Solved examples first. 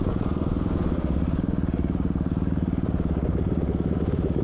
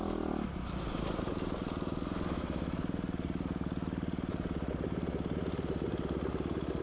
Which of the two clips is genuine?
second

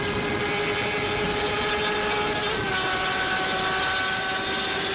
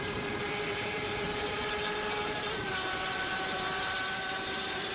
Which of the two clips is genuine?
first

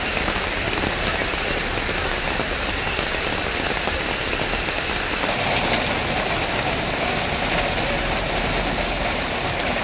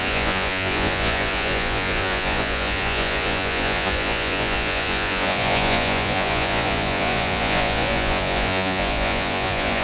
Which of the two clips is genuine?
first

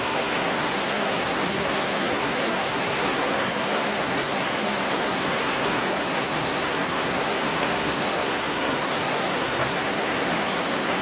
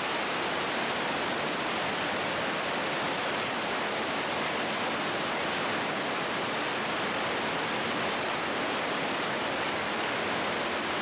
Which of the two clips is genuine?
second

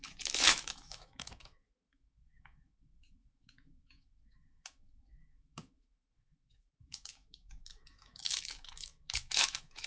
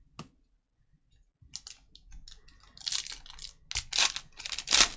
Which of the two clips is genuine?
second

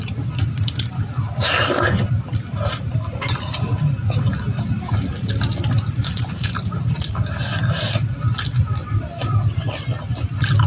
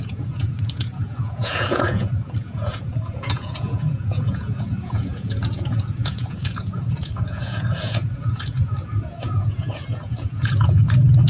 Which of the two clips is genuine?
first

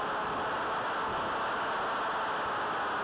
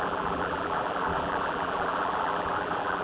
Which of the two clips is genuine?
first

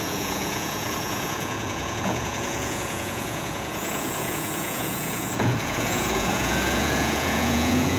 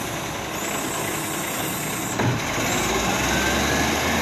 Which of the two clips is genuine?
second